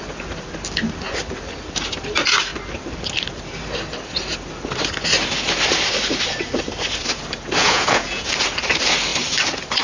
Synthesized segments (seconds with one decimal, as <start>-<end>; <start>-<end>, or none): 7.6-8.3